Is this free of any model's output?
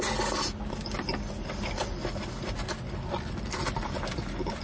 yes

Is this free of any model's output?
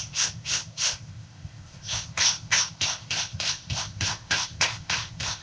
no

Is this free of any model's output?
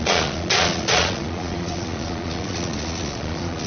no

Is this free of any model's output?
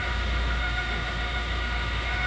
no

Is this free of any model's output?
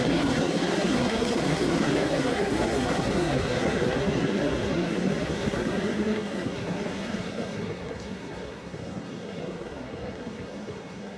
no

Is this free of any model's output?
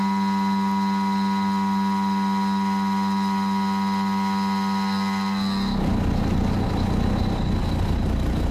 yes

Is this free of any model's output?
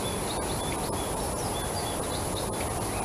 yes